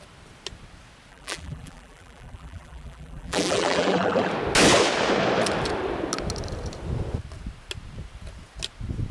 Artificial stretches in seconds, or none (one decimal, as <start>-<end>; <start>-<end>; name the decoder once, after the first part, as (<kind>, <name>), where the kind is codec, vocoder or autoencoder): 1.1-4.3 (vocoder, BigVGAN v2)